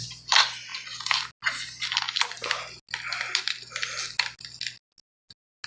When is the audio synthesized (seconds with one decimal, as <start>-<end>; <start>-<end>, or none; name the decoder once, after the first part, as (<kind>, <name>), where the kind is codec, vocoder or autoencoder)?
none